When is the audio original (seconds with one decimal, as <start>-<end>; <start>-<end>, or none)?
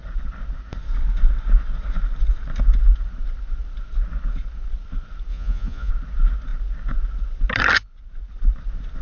0.0-5.3; 5.9-9.0